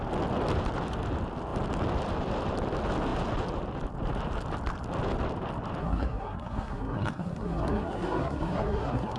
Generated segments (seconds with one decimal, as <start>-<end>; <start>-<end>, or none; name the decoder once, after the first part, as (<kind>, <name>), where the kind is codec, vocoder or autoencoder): 5.8-9.2 (codec, SNAC)

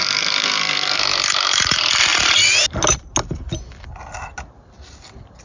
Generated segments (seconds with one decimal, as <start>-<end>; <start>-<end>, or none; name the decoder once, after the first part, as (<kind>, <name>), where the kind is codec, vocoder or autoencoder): 0.0-1.0 (codec, SNAC)